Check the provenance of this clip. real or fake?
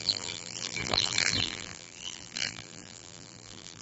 fake